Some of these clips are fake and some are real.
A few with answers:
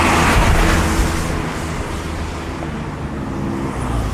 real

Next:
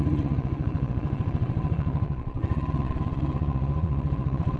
fake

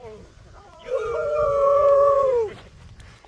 fake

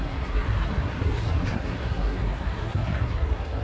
fake